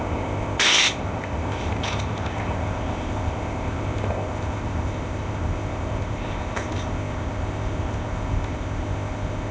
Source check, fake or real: fake